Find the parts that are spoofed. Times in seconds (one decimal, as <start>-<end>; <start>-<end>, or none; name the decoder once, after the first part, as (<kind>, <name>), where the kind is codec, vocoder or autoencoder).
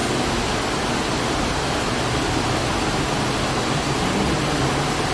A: none